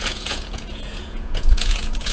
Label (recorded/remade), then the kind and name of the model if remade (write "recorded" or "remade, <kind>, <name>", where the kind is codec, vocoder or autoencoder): remade, vocoder, Vocos